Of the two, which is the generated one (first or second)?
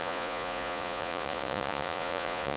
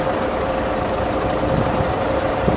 first